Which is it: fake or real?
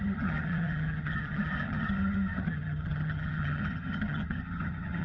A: fake